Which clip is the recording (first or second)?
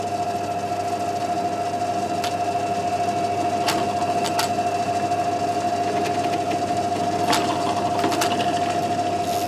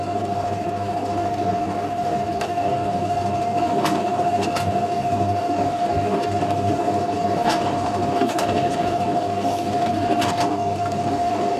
first